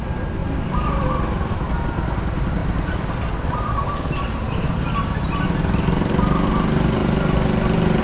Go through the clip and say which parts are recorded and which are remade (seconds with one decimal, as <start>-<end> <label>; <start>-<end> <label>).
0.0-8.0 recorded

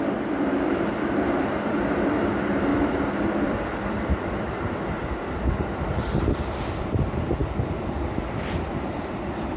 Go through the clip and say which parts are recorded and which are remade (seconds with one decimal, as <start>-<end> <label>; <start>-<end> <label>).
0.0-9.6 recorded

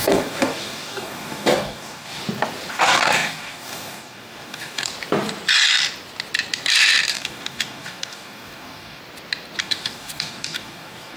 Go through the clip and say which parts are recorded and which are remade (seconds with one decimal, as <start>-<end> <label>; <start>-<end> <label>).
0.0-2.2 remade; 2.2-2.7 recorded; 2.7-4.9 remade; 4.9-7.1 recorded; 7.1-9.0 remade; 9.0-9.6 recorded; 9.6-11.2 remade

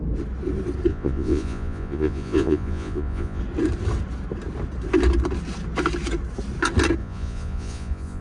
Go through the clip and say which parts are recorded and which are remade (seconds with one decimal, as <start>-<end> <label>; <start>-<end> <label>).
0.0-0.9 recorded; 0.9-3.4 remade; 3.4-7.0 recorded; 7.0-8.2 remade

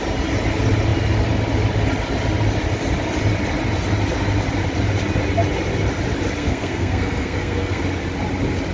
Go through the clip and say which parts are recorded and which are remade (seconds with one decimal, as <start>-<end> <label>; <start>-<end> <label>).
0.0-6.4 recorded; 6.4-7.8 remade; 7.8-8.7 recorded

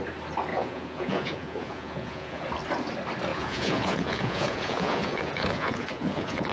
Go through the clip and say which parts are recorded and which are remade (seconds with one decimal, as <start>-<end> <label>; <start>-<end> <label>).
0.0-0.5 recorded; 0.5-2.4 remade; 2.4-3.3 recorded; 3.3-6.5 remade